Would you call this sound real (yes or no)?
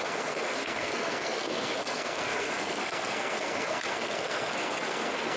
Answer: no